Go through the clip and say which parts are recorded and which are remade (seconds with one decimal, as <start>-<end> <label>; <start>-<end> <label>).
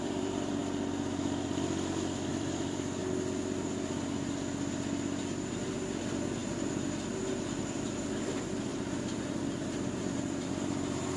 0.0-0.6 remade; 0.6-2.3 recorded; 2.3-3.0 remade; 3.0-6.0 recorded; 6.0-6.4 remade; 6.4-7.6 recorded; 7.6-11.2 remade